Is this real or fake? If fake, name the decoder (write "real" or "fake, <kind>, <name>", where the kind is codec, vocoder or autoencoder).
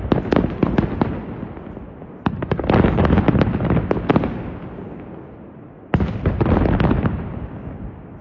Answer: real